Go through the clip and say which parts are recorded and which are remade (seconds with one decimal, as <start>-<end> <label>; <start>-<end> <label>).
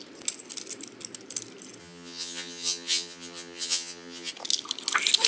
0.0-1.8 recorded; 1.8-4.3 remade; 4.3-5.3 recorded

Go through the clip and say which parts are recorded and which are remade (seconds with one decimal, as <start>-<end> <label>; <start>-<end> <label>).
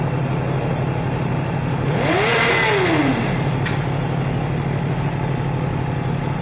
0.0-6.4 recorded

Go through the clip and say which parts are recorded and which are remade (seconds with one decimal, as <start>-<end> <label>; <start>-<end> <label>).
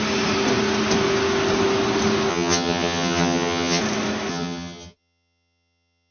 0.0-2.3 recorded; 2.3-3.8 remade; 3.8-4.3 recorded; 4.3-6.1 remade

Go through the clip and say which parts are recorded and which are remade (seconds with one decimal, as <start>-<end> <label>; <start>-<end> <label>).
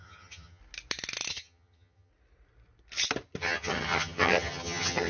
0.0-0.6 remade; 0.6-1.3 recorded; 1.3-2.1 remade; 2.1-3.4 recorded; 3.4-5.1 remade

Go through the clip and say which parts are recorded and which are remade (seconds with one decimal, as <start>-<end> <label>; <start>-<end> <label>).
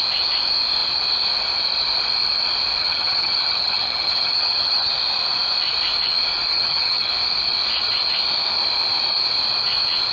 0.0-2.8 recorded; 2.8-4.9 remade; 4.9-6.5 recorded; 6.5-7.1 remade; 7.1-10.1 recorded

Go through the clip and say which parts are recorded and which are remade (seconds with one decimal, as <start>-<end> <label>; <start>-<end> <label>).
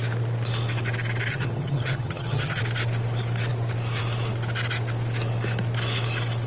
0.0-1.3 recorded; 1.3-2.6 remade; 2.6-6.5 recorded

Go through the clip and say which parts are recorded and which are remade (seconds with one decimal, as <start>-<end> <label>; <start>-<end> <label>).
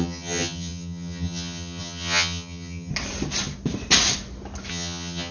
0.0-2.9 remade; 2.9-4.7 recorded; 4.7-5.3 remade